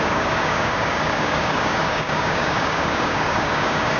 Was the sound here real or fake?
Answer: fake